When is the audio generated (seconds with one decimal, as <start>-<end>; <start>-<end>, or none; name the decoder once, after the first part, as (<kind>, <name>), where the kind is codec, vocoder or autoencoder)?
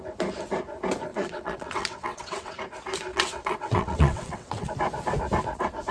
1.1-2.6 (vocoder, WaveNeXt); 3.1-4.7